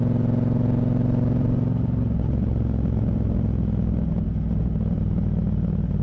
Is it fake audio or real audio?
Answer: real